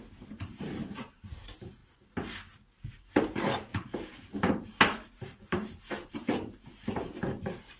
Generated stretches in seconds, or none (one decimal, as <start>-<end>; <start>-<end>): 0.0-7.8

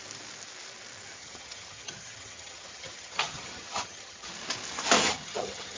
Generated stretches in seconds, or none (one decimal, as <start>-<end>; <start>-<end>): 1.2-4.3; 5.0-5.8